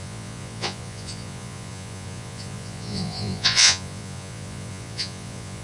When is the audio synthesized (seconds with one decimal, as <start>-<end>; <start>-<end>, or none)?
0.0-5.6